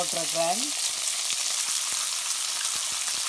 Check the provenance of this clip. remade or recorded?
recorded